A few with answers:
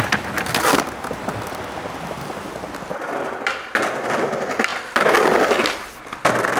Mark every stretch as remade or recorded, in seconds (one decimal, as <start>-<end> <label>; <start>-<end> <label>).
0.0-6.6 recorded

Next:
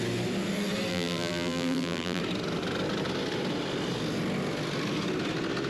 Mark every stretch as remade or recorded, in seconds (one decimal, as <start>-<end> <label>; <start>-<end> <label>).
0.0-0.9 recorded; 0.9-2.2 remade; 2.2-5.7 recorded

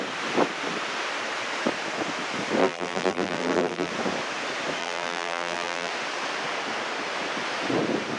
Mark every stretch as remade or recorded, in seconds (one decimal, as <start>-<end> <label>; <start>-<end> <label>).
0.0-2.6 recorded; 2.6-3.9 remade; 3.9-4.8 recorded; 4.8-5.9 remade; 5.9-8.2 recorded

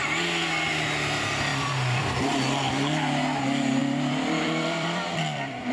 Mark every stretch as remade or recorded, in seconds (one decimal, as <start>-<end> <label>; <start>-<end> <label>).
0.0-1.5 recorded; 1.5-2.2 remade; 2.2-3.8 recorded; 3.8-5.7 remade